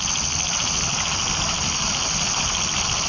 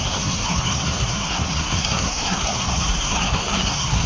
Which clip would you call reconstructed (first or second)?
second